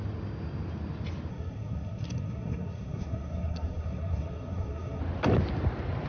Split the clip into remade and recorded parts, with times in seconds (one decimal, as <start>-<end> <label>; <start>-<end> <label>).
0.0-1.3 recorded; 1.3-5.0 remade; 5.0-6.1 recorded